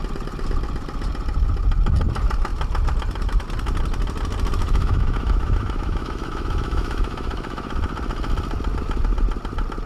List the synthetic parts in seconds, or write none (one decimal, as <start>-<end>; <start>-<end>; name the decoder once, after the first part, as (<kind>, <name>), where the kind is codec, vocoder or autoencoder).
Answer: 4.6-7.7 (autoencoder, DAC-VAE)